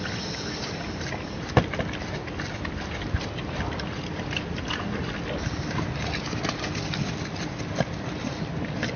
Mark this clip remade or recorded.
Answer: recorded